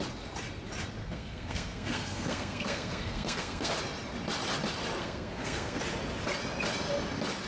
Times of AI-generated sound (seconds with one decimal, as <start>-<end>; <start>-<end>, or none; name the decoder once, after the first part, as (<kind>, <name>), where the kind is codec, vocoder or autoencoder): 1.0-3.7 (codec, SNAC); 5.0-5.8